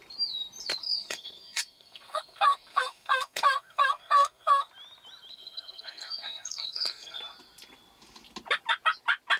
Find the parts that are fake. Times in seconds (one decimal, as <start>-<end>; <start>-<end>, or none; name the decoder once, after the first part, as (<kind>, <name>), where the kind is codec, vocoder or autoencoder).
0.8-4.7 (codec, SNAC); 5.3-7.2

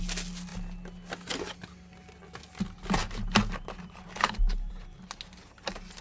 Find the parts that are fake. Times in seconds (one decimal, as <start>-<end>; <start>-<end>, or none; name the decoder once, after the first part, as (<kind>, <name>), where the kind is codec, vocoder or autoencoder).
none

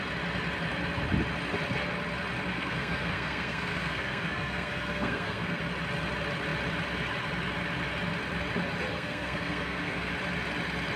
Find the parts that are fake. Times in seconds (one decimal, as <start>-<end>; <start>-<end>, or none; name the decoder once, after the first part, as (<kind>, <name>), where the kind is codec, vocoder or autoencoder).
2.5-5.6 (codec, SNAC); 8.9-10.1